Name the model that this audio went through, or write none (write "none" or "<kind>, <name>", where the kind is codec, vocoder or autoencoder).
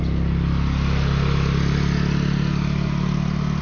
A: none